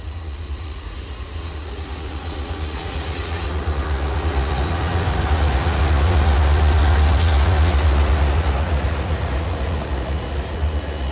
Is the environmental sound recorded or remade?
remade